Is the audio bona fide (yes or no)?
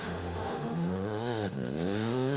no